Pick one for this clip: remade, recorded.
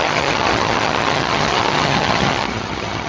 remade